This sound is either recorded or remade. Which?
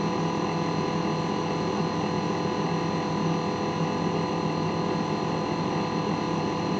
recorded